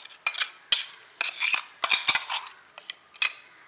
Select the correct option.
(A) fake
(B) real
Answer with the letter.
B